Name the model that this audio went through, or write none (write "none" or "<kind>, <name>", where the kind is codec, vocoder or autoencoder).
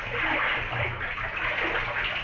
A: none